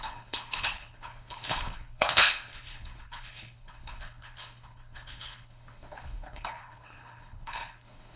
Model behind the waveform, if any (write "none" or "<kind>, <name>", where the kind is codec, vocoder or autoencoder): codec, HILCodec